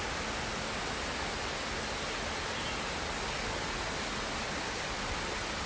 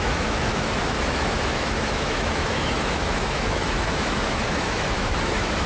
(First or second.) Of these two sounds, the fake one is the second